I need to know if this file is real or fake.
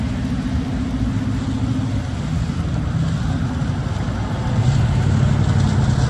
real